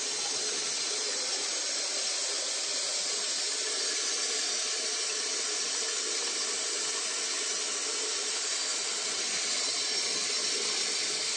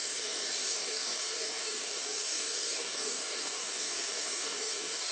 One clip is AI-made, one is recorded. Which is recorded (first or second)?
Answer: first